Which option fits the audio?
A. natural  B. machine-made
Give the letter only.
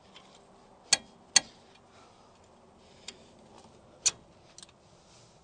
A